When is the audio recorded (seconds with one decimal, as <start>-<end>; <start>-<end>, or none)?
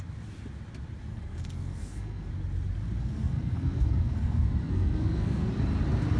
0.0-1.1; 2.3-3.0; 5.5-6.2